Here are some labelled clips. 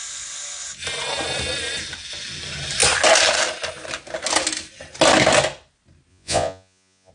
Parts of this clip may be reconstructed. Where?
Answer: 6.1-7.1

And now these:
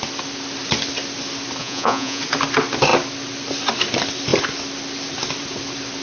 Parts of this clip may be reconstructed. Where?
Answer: 1.6-2.2

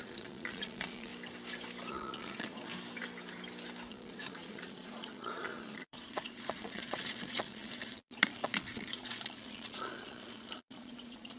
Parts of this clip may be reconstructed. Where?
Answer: 0.0-1.1; 1.9-2.7; 3.9-11.4

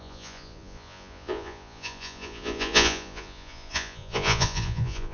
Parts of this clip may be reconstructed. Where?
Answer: 0.0-5.1

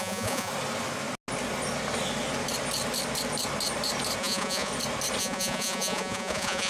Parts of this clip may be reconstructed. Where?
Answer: 0.0-0.5; 4.2-4.7; 5.2-6.7

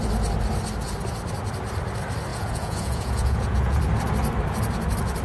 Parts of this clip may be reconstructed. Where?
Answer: 2.3-3.8

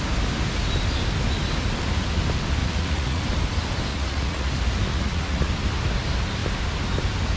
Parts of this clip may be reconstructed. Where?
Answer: 2.6-3.2; 3.9-4.5; 4.9-5.5

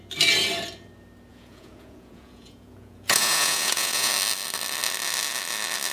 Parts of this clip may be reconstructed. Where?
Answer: 1.3-4.1